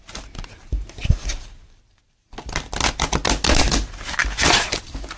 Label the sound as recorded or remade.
recorded